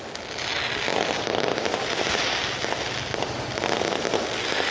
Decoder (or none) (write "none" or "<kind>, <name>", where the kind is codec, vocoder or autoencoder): none